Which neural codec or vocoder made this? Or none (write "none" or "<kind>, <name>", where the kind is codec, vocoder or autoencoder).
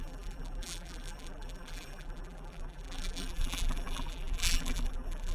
vocoder, BigVGAN v2